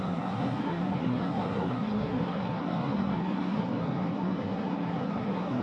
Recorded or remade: remade